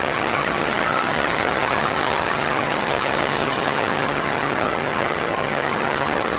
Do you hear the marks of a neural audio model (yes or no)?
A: yes